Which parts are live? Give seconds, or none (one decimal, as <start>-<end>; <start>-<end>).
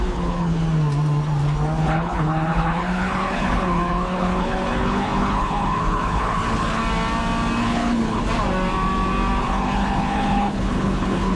0.6-1.8; 6.8-7.6; 8.2-9.4